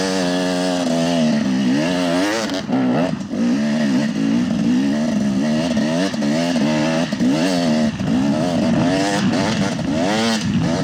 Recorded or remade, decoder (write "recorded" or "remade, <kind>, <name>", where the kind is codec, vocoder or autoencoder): recorded